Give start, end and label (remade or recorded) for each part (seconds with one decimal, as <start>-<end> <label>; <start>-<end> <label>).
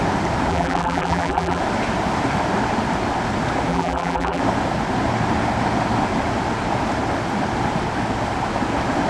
0.0-0.5 recorded; 0.5-1.6 remade; 1.6-3.7 recorded; 3.7-4.4 remade; 4.4-9.1 recorded